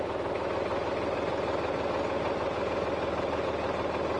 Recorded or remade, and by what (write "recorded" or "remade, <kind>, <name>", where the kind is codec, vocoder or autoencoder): recorded